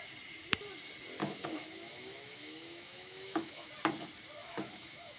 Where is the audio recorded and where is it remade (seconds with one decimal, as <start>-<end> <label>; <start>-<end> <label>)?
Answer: 0.0-1.2 recorded; 1.2-3.7 remade; 3.7-4.4 recorded; 4.4-5.2 remade